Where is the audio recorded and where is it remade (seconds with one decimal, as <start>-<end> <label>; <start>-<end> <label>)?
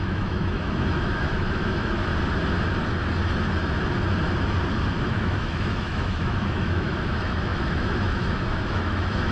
0.0-2.1 remade; 2.1-5.1 recorded; 5.1-9.3 remade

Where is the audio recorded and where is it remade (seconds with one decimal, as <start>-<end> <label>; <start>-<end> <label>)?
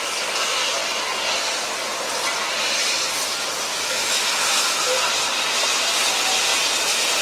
0.0-3.7 recorded; 3.7-4.8 remade; 4.8-7.2 recorded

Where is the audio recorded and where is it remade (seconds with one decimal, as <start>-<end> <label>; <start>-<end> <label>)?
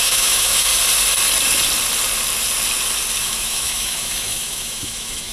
0.0-0.7 remade; 0.7-3.2 recorded; 3.2-5.3 remade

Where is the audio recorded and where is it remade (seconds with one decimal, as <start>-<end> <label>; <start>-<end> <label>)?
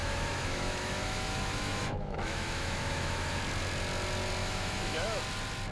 0.0-3.4 remade; 3.4-4.4 recorded; 4.4-5.2 remade; 5.2-5.7 recorded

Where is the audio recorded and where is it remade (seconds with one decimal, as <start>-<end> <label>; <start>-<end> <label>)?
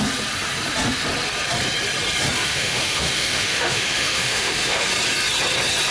0.0-2.4 recorded; 2.4-4.9 remade; 4.9-5.9 recorded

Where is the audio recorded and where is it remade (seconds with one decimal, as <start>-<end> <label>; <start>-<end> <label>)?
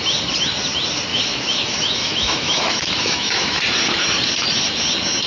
0.0-1.1 recorded; 1.1-3.6 remade; 3.6-5.3 recorded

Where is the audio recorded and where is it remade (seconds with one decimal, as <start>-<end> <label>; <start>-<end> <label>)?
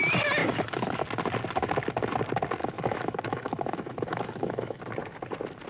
0.0-0.4 recorded; 0.4-1.0 remade; 1.0-2.6 recorded; 2.6-4.8 remade; 4.8-5.7 recorded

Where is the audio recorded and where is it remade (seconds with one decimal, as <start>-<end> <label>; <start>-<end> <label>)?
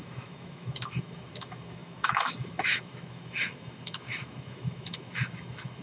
0.0-5.8 remade